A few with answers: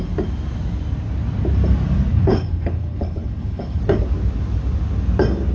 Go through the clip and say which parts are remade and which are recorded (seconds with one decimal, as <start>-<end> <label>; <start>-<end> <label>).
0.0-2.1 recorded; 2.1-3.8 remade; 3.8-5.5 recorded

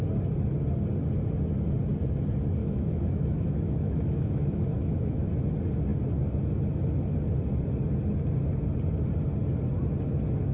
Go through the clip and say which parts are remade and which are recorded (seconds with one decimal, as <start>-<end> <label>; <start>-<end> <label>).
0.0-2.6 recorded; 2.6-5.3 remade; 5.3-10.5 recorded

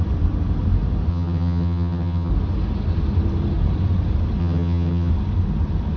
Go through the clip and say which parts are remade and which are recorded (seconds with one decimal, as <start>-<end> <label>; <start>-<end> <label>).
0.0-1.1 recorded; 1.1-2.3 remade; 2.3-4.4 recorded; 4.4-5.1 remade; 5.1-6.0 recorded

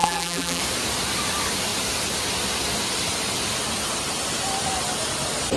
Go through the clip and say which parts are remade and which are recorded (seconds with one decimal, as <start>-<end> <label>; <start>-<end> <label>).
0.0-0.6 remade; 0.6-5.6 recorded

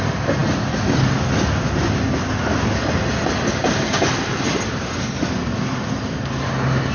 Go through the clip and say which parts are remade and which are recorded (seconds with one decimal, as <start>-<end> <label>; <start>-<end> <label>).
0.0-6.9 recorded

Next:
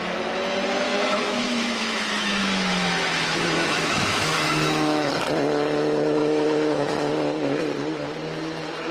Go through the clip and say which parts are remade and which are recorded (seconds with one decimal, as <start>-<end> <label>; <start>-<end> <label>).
0.0-0.9 recorded; 0.9-5.1 remade; 5.1-6.2 recorded; 6.2-7.1 remade; 7.1-8.9 recorded

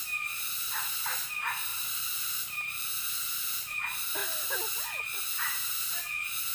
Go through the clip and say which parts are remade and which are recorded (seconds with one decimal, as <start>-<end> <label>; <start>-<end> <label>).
0.0-1.7 recorded; 1.7-2.9 remade; 2.9-6.5 recorded